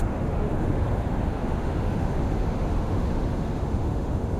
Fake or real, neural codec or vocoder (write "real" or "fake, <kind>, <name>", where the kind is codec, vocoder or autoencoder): fake, autoencoder, DAC-VAE